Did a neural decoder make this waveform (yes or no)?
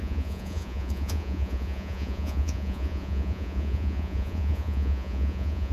yes